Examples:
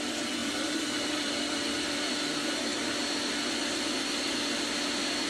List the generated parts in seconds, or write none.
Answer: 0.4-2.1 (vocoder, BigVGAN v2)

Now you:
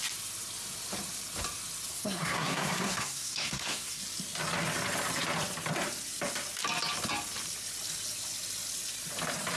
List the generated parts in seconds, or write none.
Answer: 1.9-4.0 (codec, SNAC)

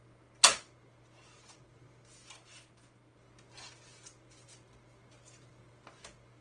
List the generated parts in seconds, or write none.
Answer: none